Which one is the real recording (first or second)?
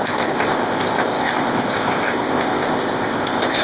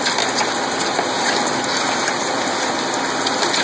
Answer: second